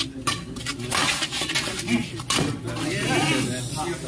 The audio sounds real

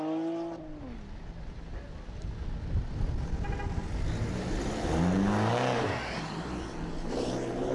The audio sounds real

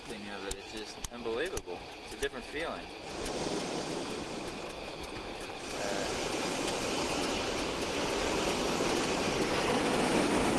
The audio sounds real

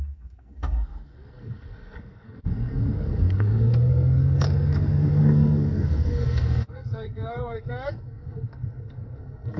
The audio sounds fake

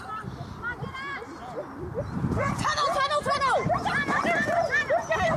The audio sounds fake